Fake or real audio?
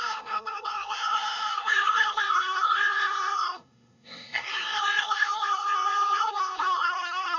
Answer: fake